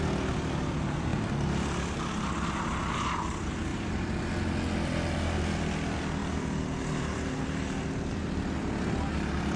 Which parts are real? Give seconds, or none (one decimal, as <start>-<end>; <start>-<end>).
0.0-3.7; 4.2-6.2; 8.7-9.6